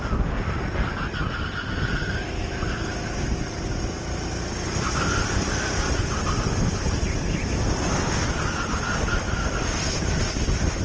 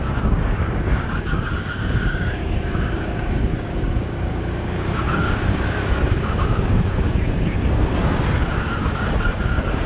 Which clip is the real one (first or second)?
first